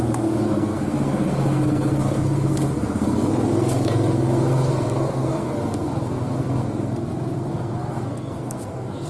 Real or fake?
fake